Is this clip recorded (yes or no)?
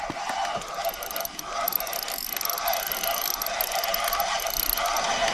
yes